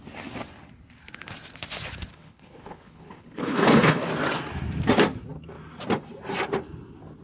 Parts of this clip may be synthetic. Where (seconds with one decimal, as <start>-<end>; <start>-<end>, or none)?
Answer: 2.1-4.0

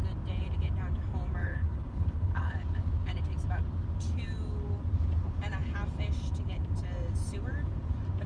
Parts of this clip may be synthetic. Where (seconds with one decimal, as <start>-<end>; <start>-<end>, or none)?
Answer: 1.4-2.5

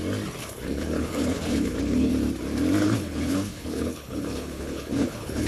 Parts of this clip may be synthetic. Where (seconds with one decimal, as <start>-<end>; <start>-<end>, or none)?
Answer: 0.4-2.1; 2.8-5.5

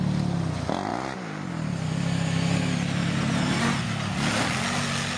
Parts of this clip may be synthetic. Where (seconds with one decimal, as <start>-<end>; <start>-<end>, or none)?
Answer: none

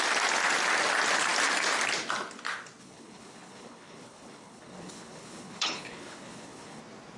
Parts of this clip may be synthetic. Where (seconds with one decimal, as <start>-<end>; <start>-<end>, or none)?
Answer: 2.8-6.8